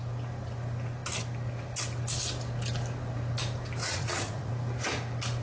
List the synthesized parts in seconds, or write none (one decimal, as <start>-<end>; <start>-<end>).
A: 3.8-4.5